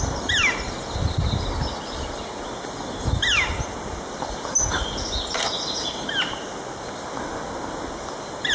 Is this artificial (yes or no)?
no